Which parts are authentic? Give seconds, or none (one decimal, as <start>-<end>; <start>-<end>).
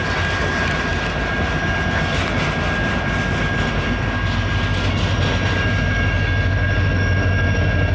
0.0-7.9